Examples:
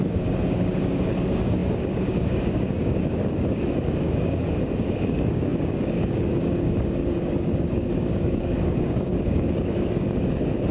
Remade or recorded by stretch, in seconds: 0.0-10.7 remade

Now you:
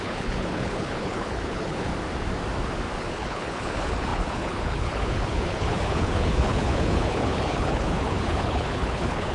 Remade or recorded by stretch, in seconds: 0.0-1.9 remade; 1.9-3.0 recorded; 3.0-9.3 remade